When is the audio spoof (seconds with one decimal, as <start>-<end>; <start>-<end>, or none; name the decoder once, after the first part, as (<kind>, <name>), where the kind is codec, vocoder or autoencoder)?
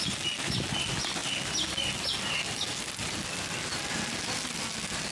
none